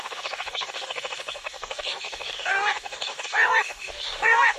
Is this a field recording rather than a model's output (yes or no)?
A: no